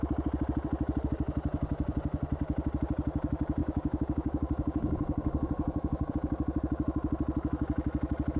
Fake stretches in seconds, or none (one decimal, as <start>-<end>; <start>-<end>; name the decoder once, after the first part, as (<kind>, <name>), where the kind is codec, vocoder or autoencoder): 3.6-6.1 (codec, DAC)